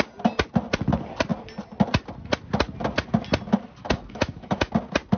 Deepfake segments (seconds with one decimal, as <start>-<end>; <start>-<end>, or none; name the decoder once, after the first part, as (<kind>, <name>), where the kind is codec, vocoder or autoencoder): 3.8-4.7 (autoencoder, DAC-VAE)